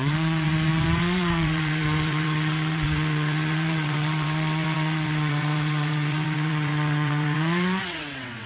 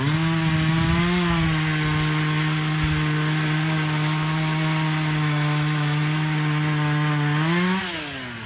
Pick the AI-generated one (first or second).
first